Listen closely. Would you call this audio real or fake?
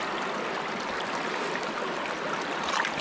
real